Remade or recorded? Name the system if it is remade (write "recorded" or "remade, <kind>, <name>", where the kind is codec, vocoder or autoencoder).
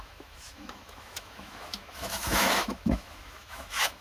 remade, autoencoder, DAC-VAE